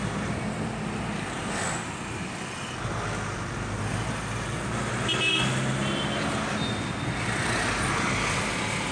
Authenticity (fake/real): real